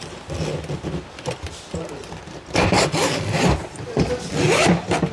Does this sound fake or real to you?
fake